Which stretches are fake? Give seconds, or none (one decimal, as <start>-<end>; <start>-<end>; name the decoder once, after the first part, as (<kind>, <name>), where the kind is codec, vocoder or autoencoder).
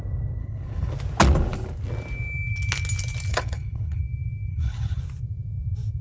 0.4-0.9 (codec, HILCodec); 3.3-4.0; 4.5-5.0